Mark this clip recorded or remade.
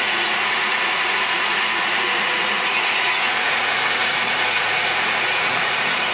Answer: remade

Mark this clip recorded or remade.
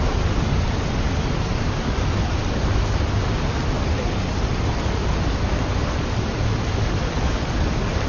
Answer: recorded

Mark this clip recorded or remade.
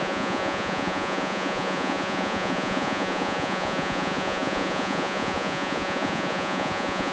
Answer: remade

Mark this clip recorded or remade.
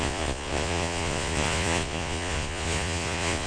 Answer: remade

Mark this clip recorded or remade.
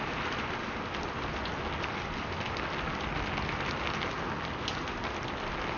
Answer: recorded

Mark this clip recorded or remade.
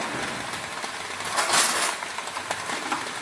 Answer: recorded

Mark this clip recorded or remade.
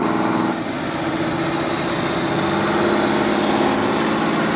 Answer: recorded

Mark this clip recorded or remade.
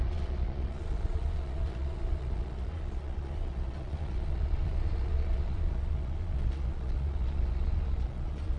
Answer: remade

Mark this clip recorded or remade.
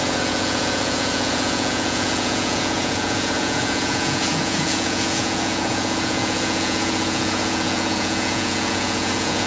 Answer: remade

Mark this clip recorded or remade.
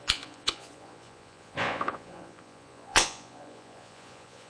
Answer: remade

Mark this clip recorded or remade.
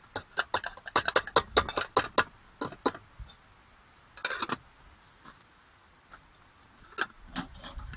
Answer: recorded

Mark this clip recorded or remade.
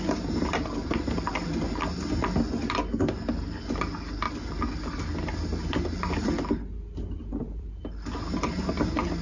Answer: recorded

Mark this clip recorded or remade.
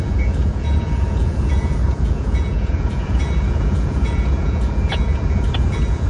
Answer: remade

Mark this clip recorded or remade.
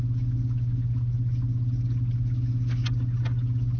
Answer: recorded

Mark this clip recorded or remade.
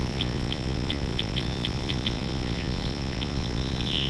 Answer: remade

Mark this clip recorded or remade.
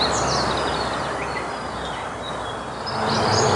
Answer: recorded